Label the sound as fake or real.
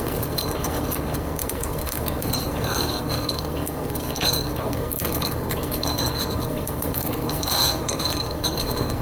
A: fake